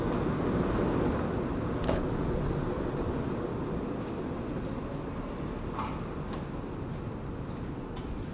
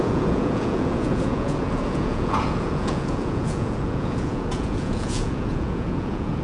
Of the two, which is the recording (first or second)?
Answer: first